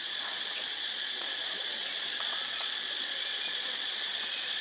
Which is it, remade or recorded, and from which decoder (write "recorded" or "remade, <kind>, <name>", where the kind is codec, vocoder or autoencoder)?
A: remade, vocoder, Vocos